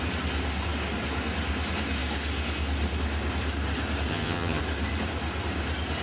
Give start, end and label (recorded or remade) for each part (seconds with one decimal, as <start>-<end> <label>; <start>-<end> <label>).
0.0-4.1 recorded; 4.1-4.6 remade; 4.6-6.0 recorded